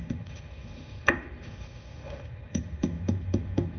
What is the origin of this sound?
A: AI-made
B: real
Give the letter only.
A